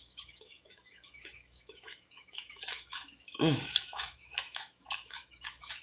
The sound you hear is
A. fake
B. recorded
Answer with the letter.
A